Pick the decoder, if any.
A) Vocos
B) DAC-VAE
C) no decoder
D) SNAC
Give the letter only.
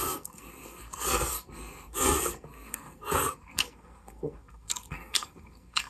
D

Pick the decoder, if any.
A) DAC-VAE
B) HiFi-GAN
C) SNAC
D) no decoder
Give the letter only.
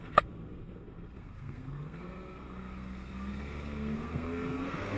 C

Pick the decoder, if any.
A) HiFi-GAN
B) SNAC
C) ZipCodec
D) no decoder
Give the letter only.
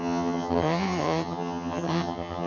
A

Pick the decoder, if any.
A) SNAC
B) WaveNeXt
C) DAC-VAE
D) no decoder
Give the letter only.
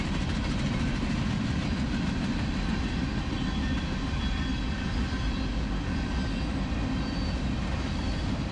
D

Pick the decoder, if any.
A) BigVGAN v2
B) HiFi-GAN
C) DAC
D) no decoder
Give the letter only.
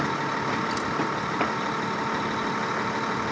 D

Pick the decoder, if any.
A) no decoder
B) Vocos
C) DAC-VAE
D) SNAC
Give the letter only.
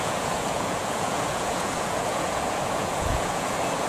B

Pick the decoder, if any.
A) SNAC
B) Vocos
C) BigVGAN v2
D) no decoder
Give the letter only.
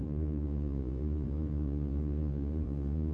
B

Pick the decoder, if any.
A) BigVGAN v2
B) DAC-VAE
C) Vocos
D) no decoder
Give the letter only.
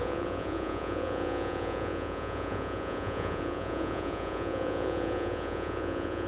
C